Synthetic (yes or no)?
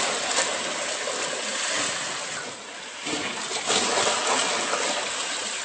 no